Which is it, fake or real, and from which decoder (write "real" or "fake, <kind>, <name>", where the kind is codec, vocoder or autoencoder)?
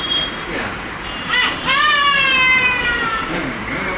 fake, vocoder, BigVGAN v2